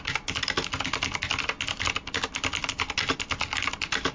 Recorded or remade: recorded